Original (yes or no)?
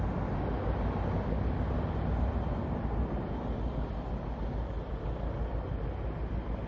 yes